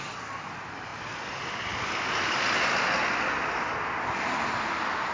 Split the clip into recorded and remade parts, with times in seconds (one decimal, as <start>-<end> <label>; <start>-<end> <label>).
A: 0.0-5.1 recorded